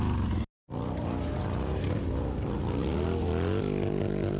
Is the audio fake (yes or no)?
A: no